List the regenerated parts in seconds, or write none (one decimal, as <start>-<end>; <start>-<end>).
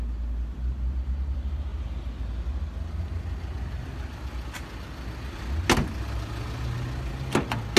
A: none